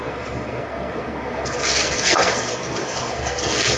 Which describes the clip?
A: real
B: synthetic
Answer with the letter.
B